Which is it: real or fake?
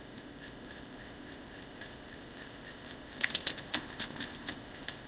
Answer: fake